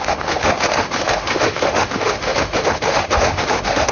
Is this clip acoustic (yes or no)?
no